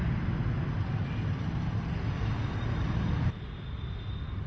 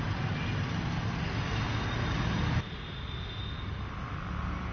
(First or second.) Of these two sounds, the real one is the second